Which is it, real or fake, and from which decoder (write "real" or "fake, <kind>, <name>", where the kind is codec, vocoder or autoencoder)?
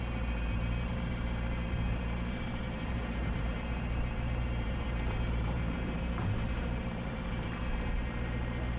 fake, vocoder, BigVGAN v2